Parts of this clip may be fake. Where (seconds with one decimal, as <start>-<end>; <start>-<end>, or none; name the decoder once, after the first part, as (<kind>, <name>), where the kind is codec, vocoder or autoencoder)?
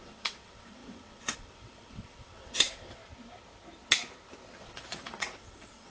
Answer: 0.0-3.0 (vocoder, WaveNeXt); 4.6-5.9